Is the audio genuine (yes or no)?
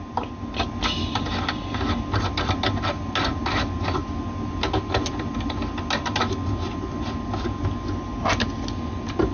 yes